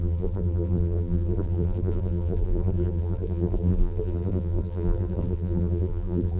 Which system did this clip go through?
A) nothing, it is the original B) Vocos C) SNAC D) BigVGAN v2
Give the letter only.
D